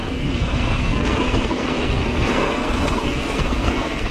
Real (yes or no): no